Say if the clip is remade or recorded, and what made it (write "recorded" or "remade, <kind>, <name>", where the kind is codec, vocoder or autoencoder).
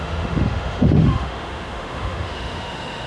remade, autoencoder, DAC-VAE